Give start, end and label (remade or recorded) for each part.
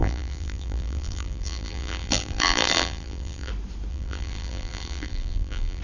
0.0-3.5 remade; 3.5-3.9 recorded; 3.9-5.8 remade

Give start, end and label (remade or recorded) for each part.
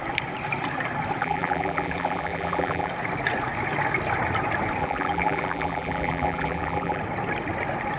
0.0-1.2 recorded; 1.2-2.9 remade; 2.9-4.8 recorded; 4.8-7.0 remade; 7.0-8.0 recorded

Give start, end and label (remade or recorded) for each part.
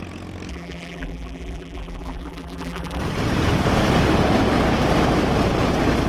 0.0-0.5 recorded; 0.5-3.0 remade; 3.0-6.1 recorded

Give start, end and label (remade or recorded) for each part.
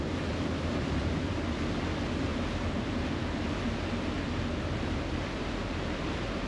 0.0-2.3 recorded; 2.3-6.5 remade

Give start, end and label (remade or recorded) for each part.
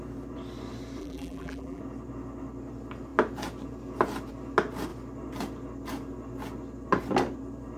0.0-1.0 recorded; 1.0-1.8 remade; 1.8-7.8 recorded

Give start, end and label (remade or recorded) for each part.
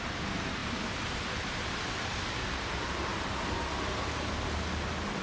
0.0-3.1 remade; 3.1-5.2 recorded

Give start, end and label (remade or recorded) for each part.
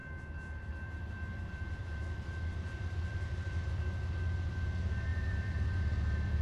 0.0-3.8 remade; 3.8-5.1 recorded; 5.1-5.7 remade; 5.7-6.4 recorded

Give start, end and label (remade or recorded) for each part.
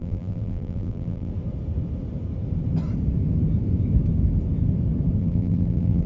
0.0-1.3 remade; 1.3-5.2 recorded; 5.2-6.1 remade